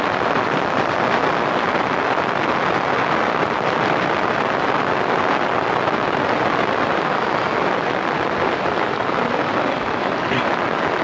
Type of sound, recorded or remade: recorded